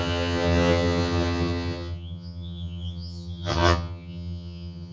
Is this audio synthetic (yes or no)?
yes